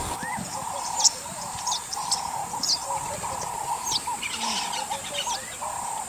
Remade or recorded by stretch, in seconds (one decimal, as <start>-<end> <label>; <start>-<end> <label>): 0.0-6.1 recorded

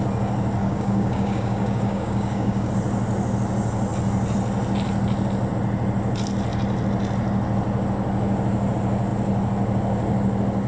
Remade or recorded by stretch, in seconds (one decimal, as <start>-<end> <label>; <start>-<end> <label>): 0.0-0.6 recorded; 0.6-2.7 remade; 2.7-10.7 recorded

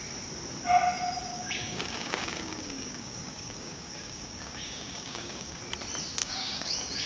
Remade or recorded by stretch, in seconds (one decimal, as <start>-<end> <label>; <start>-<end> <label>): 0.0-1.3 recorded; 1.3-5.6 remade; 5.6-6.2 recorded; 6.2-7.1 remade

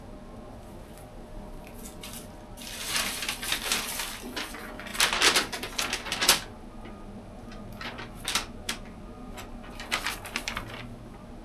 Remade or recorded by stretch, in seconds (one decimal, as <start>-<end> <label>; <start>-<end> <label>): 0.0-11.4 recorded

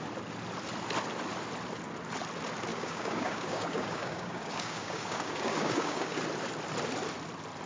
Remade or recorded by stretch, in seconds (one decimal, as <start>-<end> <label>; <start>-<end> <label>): 0.0-2.7 recorded; 2.7-6.2 remade; 6.2-7.7 recorded

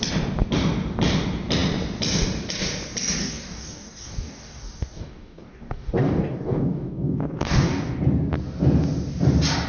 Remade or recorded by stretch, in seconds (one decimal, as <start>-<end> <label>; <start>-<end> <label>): 0.0-3.2 recorded; 3.2-8.0 remade; 8.0-9.7 recorded

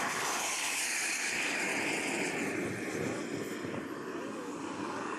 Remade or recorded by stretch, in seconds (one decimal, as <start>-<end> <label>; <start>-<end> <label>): 0.0-1.7 remade; 1.7-4.2 recorded; 4.2-5.2 remade